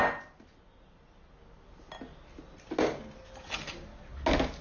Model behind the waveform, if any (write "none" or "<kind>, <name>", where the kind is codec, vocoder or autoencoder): none